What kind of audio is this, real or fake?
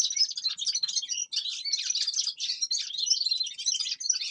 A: real